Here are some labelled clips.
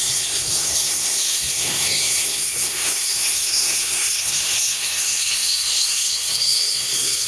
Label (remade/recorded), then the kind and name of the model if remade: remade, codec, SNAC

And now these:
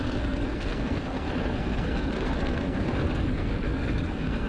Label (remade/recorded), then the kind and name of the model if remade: remade, codec, SNAC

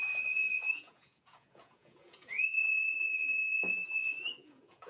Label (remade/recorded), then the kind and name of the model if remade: remade, vocoder, Vocos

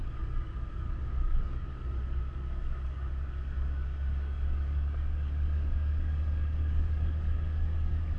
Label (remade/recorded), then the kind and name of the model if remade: remade, codec, DAC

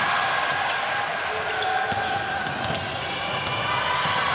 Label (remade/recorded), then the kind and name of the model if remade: recorded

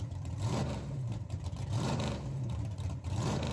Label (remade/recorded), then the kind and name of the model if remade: remade, vocoder, BigVGAN v2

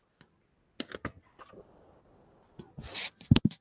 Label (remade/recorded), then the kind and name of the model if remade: recorded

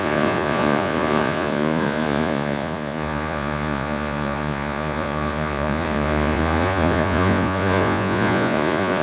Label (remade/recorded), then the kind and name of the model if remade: remade, vocoder, Vocos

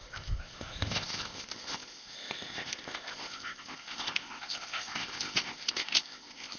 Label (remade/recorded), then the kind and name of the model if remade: remade, codec, ZipCodec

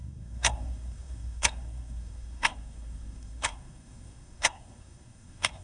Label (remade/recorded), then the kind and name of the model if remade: remade, codec, SNAC